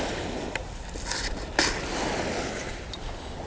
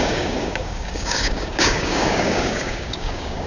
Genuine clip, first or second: first